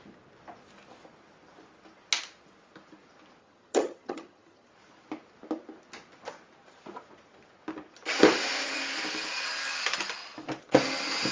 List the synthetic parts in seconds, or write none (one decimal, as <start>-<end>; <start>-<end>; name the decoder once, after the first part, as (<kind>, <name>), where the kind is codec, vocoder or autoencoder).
3.4-4.7 (vocoder, HiFi-GAN)